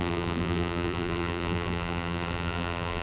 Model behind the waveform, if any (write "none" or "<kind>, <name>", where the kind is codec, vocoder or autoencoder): vocoder, BigVGAN v2